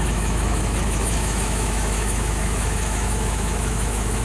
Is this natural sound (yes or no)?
no